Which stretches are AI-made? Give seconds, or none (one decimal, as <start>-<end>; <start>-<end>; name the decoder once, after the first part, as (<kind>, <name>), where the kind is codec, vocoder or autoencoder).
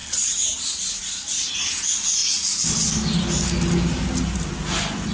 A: none